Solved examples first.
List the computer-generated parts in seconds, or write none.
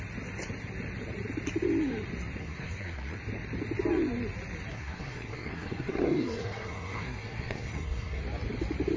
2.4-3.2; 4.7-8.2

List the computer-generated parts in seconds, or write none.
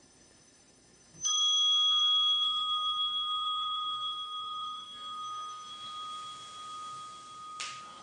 0.0-5.7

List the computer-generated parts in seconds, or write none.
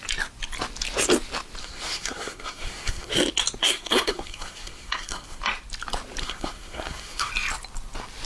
1.6-3.1; 3.6-5.4; 6.2-7.3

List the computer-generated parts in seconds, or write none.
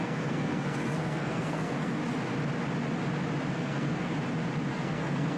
0.0-2.0; 3.5-4.1; 4.7-5.4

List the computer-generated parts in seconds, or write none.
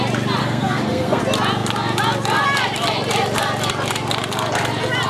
0.4-1.2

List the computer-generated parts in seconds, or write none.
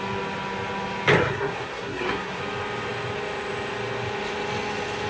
1.2-2.4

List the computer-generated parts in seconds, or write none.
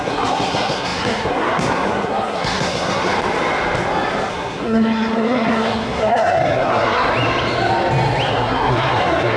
0.0-3.1; 4.3-7.1; 8.3-9.4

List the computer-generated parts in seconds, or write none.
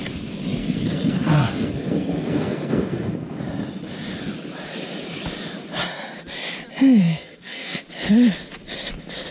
0.6-3.4; 7.0-7.8